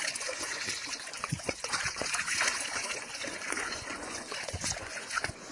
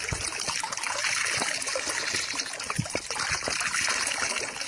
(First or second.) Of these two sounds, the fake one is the first